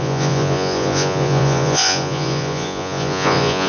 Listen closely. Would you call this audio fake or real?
fake